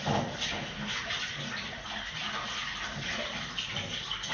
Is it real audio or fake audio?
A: real